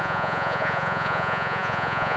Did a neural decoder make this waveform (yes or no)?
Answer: yes